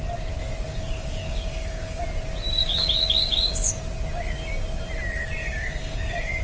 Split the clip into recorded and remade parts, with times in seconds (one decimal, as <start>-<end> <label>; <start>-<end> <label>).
0.0-0.7 recorded; 0.7-2.0 remade; 2.0-2.6 recorded; 2.6-3.7 remade; 3.7-5.4 recorded; 5.4-6.4 remade